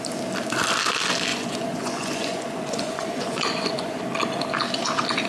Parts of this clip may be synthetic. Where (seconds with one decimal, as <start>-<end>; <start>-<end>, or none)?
1.3-4.0